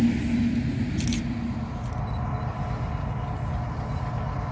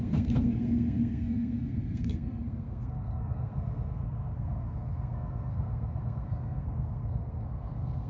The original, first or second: first